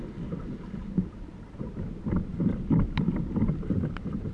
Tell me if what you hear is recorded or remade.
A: recorded